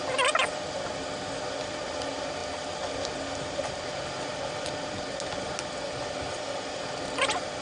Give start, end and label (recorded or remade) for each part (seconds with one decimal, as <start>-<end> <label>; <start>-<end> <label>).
0.0-7.6 recorded